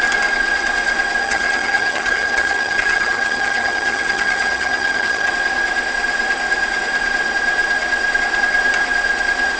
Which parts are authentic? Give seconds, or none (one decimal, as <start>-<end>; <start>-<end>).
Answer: 0.0-1.2; 5.3-9.6